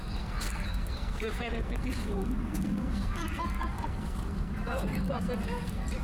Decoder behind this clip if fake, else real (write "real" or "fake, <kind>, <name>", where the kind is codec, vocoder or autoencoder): fake, codec, SNAC